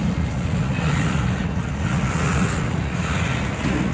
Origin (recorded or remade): remade